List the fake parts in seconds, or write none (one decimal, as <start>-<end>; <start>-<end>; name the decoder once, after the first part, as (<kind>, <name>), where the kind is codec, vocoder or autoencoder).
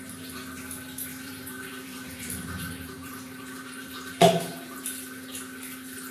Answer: 1.1-4.8 (vocoder, BigVGAN v2)